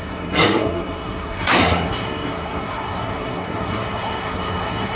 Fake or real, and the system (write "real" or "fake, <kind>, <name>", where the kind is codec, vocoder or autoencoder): fake, codec, SNAC